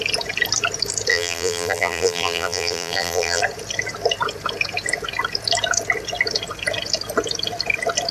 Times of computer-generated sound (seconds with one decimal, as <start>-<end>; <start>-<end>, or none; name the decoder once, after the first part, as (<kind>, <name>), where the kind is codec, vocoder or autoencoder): 1.1-3.4 (vocoder, BigVGAN v2)